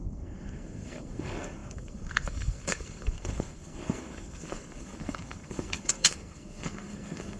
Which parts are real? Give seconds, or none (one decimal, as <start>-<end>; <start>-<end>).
none